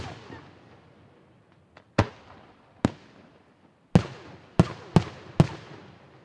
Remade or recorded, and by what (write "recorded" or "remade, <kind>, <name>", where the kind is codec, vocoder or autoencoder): recorded